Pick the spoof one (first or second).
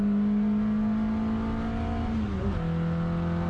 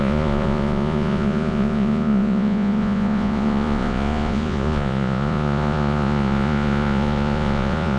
second